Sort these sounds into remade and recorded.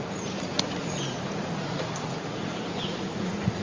remade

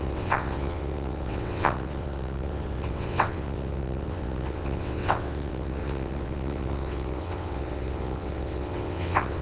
remade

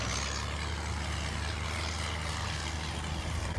recorded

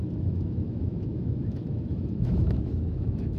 remade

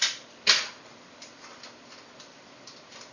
remade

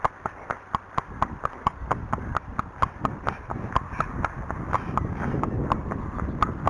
recorded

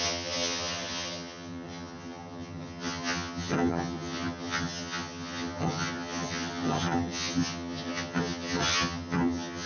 remade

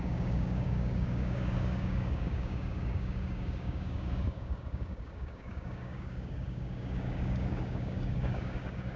remade